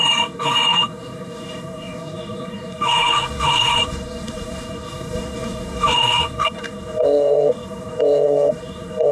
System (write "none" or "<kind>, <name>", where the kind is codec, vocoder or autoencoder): codec, SNAC